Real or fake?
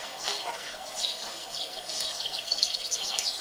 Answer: fake